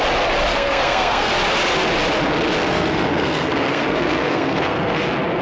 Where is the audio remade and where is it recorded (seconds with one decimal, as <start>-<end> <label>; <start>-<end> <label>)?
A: 0.0-0.5 recorded; 0.5-1.3 remade; 1.3-2.6 recorded; 2.6-5.0 remade; 5.0-5.4 recorded